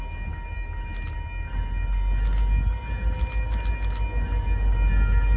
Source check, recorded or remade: recorded